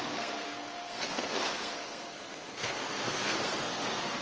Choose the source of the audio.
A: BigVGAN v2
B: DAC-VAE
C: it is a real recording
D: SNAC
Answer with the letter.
D